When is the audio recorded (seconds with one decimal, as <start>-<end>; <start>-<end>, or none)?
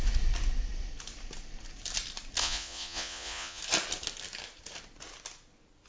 0.0-2.4; 3.6-5.9